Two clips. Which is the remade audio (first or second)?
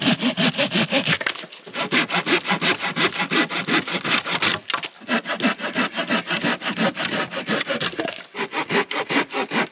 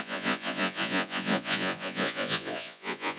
second